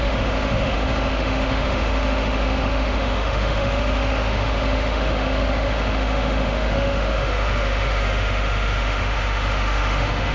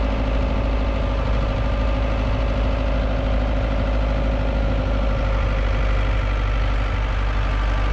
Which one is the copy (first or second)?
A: first